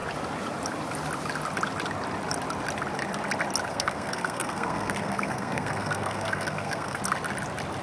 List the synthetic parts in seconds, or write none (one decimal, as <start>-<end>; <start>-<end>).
3.7-7.0